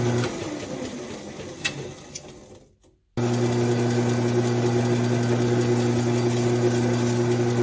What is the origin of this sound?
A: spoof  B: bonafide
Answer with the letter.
B